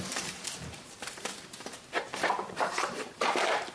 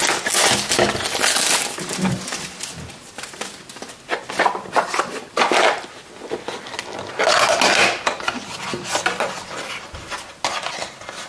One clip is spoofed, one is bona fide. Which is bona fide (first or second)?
second